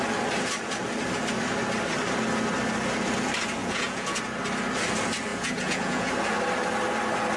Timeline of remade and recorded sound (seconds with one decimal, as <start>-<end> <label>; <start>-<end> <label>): 0.0-3.6 recorded; 3.6-4.2 remade; 4.2-5.3 recorded; 5.3-6.1 remade; 6.1-7.4 recorded

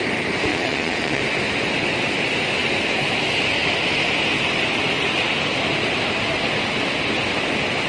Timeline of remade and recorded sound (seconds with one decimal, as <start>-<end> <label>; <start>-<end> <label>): 0.0-0.5 recorded; 0.5-1.2 remade; 1.2-7.9 recorded

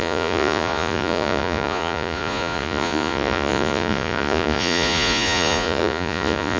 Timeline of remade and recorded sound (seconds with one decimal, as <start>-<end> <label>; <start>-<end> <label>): 0.0-6.6 remade

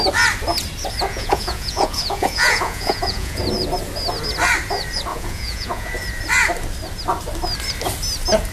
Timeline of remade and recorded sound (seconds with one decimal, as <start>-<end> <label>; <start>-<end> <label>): 0.0-1.1 recorded; 1.1-3.4 remade; 3.4-5.1 recorded; 5.1-5.9 remade; 5.9-8.5 recorded

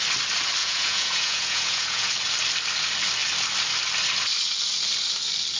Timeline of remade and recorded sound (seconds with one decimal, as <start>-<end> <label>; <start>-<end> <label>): 0.0-0.6 recorded; 0.6-2.1 remade; 2.1-5.6 recorded

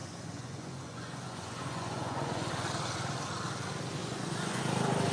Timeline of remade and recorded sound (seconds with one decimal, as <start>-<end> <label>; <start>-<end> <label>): 0.0-2.5 remade; 2.5-4.0 recorded; 4.0-4.6 remade; 4.6-5.1 recorded

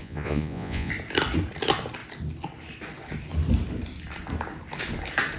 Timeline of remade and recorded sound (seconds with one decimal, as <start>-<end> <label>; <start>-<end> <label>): 0.0-0.9 remade; 0.9-5.4 recorded

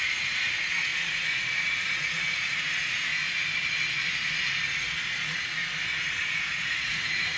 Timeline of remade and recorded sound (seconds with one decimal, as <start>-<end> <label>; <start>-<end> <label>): 0.0-3.1 remade; 3.1-5.0 recorded; 5.0-5.6 remade; 5.6-6.2 recorded; 6.2-7.4 remade